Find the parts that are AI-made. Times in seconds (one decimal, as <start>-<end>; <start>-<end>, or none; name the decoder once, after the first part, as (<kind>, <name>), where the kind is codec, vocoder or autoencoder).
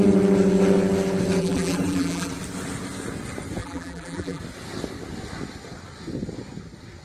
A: 1.4-2.3 (vocoder, BigVGAN v2); 3.6-4.4